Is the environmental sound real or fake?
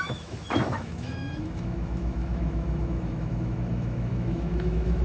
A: fake